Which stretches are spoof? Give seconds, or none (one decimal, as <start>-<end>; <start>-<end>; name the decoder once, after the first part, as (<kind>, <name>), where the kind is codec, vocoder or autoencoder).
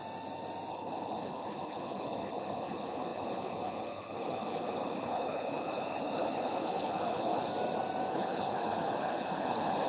0.7-7.5 (codec, HILCodec); 8.1-9.9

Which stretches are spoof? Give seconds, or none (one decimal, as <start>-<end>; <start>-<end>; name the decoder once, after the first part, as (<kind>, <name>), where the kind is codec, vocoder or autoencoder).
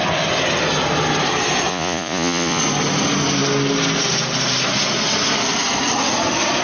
1.7-2.6 (vocoder, Vocos)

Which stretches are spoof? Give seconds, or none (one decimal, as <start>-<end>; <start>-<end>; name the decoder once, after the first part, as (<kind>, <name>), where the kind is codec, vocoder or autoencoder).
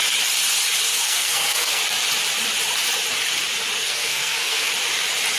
0.9-1.8 (codec, SNAC); 3.8-4.7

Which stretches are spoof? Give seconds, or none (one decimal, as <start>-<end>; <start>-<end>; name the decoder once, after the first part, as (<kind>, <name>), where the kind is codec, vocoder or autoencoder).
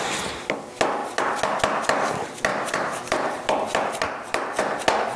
1.0-1.6 (vocoder, BigVGAN v2); 2.5-4.6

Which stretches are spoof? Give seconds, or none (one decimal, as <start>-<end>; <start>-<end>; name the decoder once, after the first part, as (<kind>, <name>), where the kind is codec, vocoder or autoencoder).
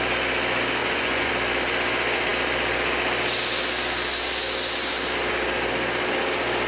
0.8-1.3 (vocoder, Vocos)